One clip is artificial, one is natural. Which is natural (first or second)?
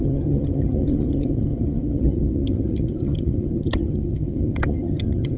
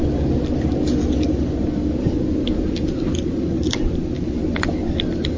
second